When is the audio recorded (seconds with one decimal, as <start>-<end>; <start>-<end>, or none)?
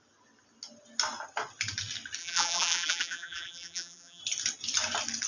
0.0-2.2; 4.2-5.3